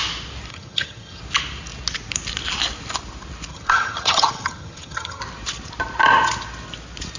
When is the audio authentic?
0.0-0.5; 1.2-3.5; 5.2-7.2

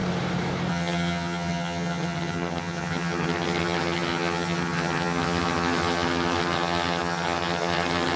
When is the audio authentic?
0.0-0.7

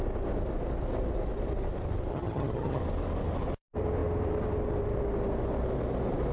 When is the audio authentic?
0.0-2.1; 2.8-6.3

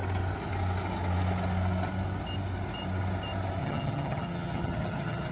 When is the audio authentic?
0.0-3.6

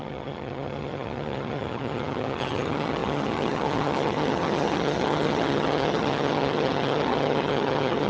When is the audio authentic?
none